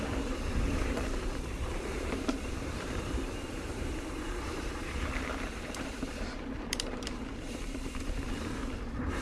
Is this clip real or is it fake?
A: fake